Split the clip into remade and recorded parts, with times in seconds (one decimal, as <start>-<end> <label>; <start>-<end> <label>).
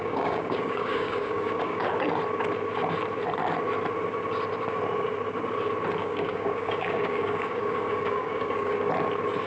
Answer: 0.0-1.9 remade; 1.9-6.0 recorded; 6.0-8.9 remade; 8.9-9.5 recorded